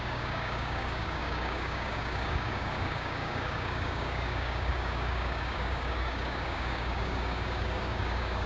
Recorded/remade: remade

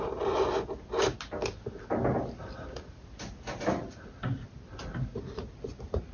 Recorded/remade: recorded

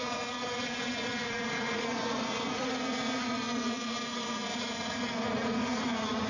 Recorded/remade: remade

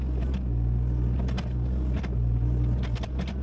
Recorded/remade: recorded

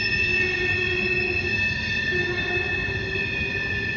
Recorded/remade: recorded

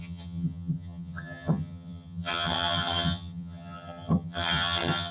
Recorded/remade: remade